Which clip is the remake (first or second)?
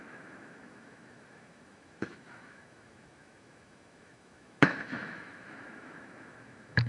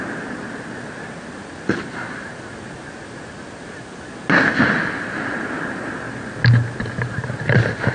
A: first